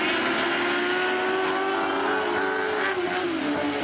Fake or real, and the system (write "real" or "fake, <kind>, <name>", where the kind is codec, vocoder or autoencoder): real